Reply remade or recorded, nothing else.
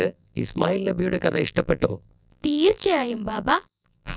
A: remade